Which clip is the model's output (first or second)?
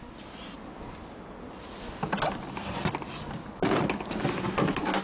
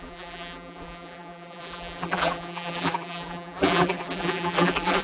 second